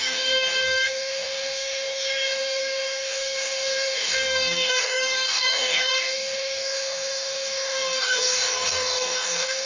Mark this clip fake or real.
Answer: fake